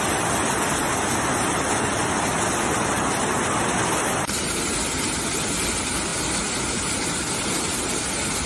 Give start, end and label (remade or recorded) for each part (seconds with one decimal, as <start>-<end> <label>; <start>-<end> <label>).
0.0-8.5 recorded